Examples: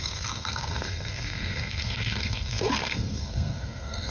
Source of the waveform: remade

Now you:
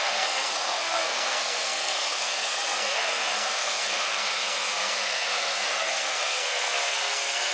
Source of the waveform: remade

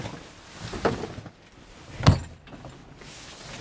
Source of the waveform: recorded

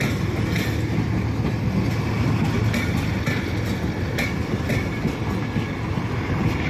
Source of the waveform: recorded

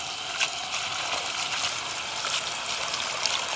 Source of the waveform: recorded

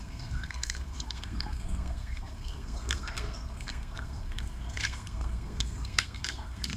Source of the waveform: remade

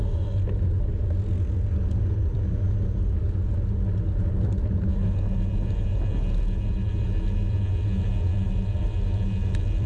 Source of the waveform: recorded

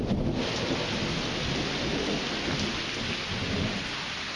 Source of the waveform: recorded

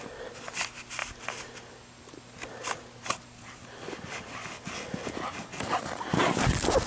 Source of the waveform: recorded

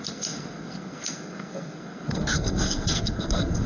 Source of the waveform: remade